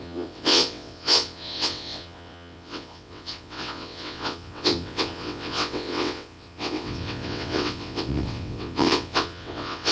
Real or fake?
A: fake